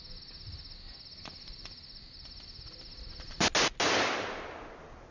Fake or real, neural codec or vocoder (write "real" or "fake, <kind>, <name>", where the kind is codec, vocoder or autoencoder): real